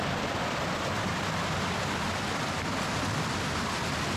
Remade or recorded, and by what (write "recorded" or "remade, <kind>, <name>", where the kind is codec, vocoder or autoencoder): recorded